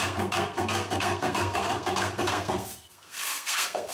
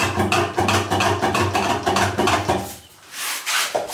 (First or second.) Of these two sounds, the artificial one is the first